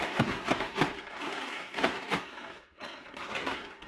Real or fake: fake